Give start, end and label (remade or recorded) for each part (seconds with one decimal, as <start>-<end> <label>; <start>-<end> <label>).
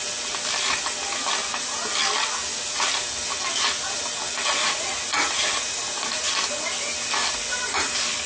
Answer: 0.0-4.6 recorded; 4.6-6.3 remade; 6.3-8.3 recorded